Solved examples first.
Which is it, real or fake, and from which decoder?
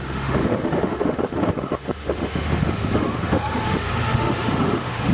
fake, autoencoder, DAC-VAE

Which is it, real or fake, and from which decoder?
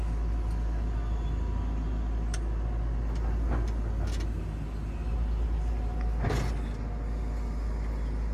real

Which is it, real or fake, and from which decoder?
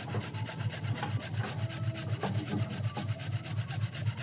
real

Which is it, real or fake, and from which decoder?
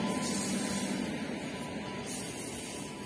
real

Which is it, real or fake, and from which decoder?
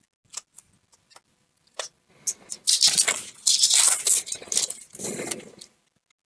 real